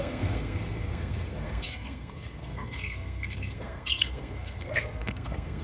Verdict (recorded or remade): remade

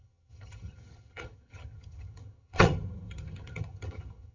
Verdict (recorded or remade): remade